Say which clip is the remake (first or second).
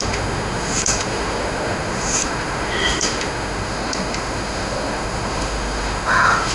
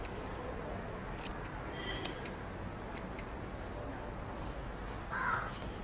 first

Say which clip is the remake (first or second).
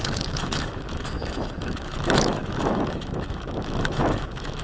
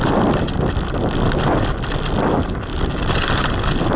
first